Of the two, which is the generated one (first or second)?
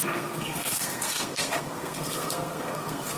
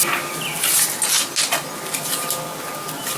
first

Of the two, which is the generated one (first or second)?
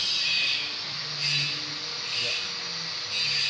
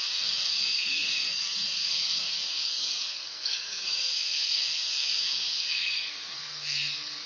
second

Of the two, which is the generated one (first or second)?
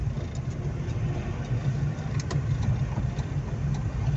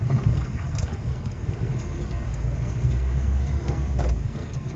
second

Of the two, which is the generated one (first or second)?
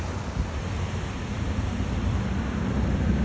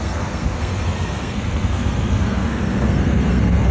second